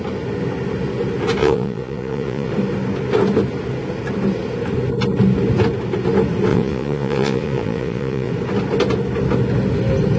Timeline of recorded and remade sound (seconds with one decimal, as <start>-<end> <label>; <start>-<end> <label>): 0.0-1.4 recorded; 1.4-2.5 remade; 2.5-6.5 recorded; 6.5-8.3 remade; 8.3-10.2 recorded